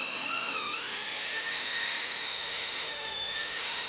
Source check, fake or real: fake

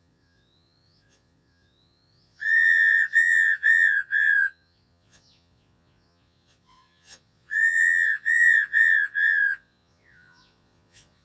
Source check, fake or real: fake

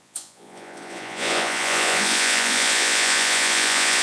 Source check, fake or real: fake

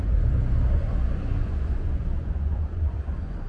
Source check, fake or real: fake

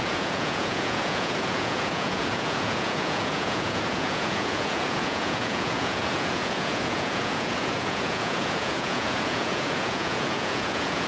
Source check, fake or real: fake